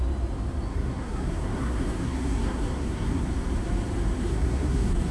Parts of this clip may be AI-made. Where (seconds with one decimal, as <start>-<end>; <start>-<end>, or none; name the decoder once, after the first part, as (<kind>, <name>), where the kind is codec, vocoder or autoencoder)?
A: 0.7-3.3 (codec, SNAC); 4.2-5.1

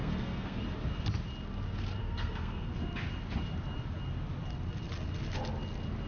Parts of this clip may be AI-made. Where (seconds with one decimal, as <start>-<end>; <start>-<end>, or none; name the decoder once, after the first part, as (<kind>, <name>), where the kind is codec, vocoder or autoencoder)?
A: 0.0-0.6 (codec, SNAC); 2.0-2.7

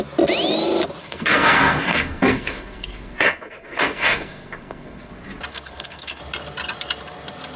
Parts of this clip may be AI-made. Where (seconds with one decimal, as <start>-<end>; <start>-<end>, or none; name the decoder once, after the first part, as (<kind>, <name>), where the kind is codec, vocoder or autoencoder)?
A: 1.0-5.1 (codec, SNAC); 5.5-6.2

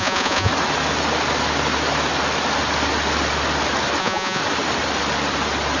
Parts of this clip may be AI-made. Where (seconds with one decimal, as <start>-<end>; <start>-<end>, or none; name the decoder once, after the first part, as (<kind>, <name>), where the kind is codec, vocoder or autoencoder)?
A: 0.0-0.5 (vocoder, Vocos); 4.0-4.4

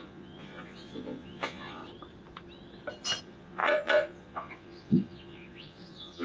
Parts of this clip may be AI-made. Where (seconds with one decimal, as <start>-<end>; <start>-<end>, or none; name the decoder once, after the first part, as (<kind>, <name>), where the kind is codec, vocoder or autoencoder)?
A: 0.0-1.8 (vocoder, Vocos); 3.2-6.2